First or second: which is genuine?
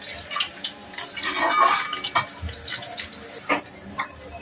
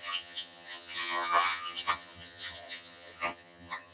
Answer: first